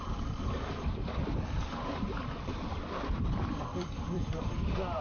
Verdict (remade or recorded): remade